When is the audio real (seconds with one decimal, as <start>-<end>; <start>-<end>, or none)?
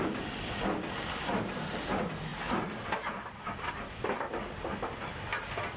2.3-3.0; 5.3-5.8